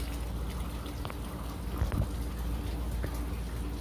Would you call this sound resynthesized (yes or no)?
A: no